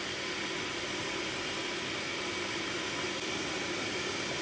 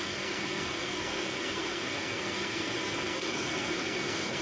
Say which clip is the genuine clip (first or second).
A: first